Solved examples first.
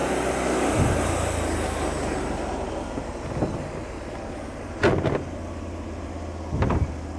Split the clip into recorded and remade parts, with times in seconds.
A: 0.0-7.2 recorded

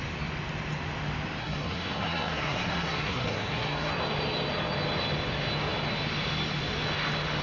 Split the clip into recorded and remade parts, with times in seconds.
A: 0.0-1.4 recorded; 1.4-3.9 remade; 3.9-7.4 recorded

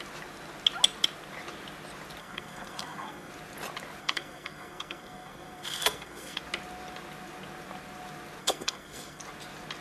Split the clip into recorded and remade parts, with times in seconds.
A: 0.0-2.2 recorded; 2.2-3.3 remade; 3.3-4.0 recorded; 4.0-6.4 remade; 6.4-8.4 recorded; 8.4-9.2 remade; 9.2-9.8 recorded

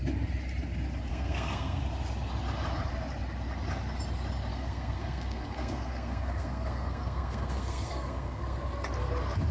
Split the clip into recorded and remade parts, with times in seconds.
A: 0.0-1.1 recorded; 1.1-1.8 remade; 1.8-4.5 recorded; 4.5-8.6 remade; 8.6-9.5 recorded

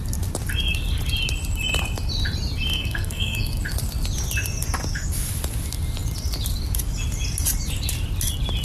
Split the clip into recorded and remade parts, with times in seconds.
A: 0.0-2.7 recorded; 2.7-3.6 remade; 3.6-8.6 recorded